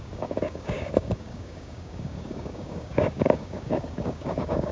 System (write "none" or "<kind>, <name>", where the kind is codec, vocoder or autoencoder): codec, DAC